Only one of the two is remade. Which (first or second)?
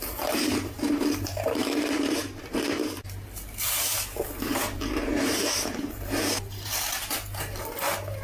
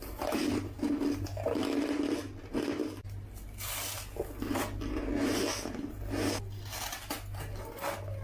first